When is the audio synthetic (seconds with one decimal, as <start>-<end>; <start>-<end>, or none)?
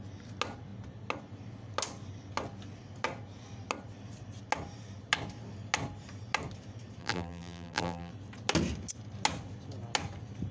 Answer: 7.0-8.1